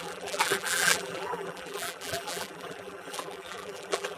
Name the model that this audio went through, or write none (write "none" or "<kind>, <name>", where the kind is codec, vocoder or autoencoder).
vocoder, BigVGAN v2